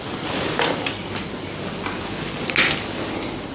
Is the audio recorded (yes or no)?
yes